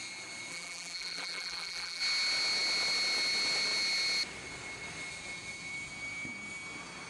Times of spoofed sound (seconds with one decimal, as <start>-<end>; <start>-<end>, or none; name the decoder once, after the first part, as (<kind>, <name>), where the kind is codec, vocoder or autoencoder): 0.5-2.0 (vocoder, BigVGAN v2)